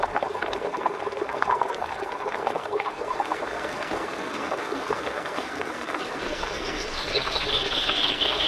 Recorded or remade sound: remade